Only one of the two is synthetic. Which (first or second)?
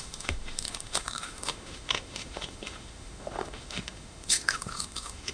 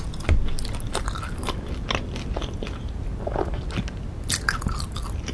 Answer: first